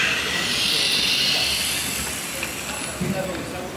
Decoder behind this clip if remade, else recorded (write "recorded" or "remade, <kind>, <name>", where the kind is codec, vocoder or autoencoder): recorded